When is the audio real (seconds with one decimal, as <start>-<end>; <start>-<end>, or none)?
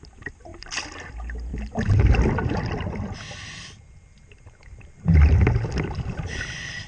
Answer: 0.0-6.9